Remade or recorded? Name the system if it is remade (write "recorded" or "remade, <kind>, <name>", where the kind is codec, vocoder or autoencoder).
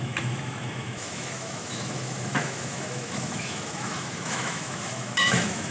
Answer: remade, autoencoder, DAC-VAE